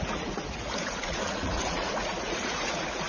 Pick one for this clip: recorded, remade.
remade